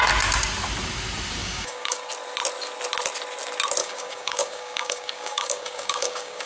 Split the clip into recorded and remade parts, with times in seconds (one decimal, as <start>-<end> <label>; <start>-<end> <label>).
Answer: 0.0-1.4 recorded; 1.4-2.1 remade; 2.1-3.8 recorded; 3.8-6.5 remade